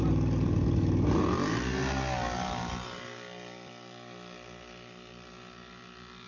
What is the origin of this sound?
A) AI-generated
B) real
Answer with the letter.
B